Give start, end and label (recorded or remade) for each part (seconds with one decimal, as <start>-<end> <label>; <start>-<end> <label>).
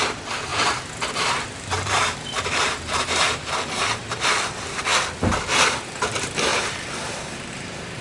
0.0-0.5 remade; 0.5-1.1 recorded; 1.1-4.9 remade; 4.9-5.4 recorded; 5.4-8.0 remade